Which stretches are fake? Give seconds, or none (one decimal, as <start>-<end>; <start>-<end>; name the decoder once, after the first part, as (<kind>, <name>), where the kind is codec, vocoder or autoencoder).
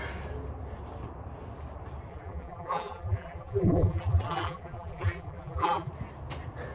2.1-5.9 (vocoder, BigVGAN v2)